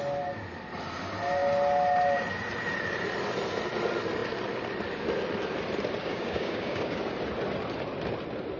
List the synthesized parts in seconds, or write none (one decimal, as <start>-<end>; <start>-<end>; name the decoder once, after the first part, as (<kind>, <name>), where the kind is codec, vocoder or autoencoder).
6.0-7.0 (codec, DAC)